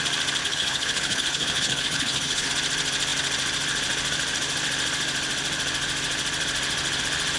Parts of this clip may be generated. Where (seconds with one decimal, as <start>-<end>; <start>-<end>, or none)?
0.4-2.5